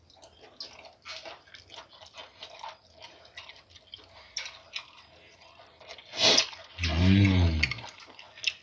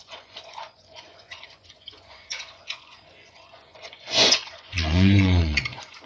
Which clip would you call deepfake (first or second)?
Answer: second